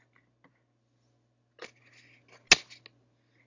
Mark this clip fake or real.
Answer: real